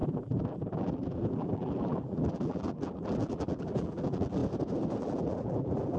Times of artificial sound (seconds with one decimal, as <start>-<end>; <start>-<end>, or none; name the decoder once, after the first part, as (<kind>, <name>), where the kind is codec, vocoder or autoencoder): 0.0-4.4 (vocoder, BigVGAN v2); 5.0-6.0